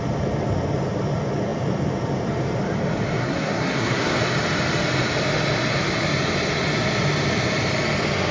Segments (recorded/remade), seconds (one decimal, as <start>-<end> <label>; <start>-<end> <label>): 0.0-3.2 recorded; 3.2-4.2 remade; 4.2-8.3 recorded